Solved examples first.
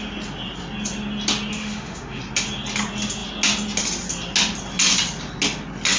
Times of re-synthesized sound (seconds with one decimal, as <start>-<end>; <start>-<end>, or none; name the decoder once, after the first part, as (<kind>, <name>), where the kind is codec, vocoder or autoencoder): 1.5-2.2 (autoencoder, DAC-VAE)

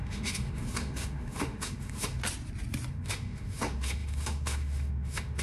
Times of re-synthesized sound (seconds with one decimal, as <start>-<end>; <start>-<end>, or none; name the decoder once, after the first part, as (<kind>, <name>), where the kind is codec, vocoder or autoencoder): 0.0-2.2 (autoencoder, DAC-VAE); 2.9-5.4

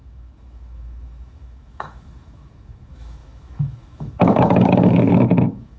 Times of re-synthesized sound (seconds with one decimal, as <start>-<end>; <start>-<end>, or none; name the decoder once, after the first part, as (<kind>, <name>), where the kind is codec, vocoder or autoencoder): 0.0-5.8 (autoencoder, DAC-VAE)

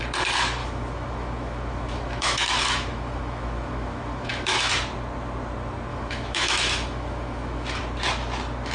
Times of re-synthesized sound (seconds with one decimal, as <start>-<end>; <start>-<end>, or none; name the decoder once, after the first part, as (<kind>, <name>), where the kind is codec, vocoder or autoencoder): 0.6-4.7 (autoencoder, DAC-VAE); 5.9-7.8

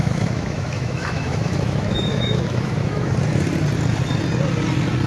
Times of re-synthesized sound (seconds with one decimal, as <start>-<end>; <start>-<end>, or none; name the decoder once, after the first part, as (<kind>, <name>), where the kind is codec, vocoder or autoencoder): 0.0-3.1 (autoencoder, DAC-VAE)

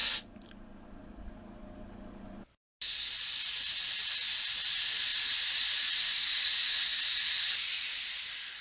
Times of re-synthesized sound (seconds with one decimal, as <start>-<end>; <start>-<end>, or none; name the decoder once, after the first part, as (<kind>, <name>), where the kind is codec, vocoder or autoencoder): none

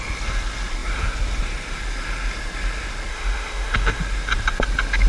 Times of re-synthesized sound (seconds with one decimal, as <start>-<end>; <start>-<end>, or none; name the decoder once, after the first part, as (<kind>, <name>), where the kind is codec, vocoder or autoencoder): 3.1-4.0 (autoencoder, DAC-VAE)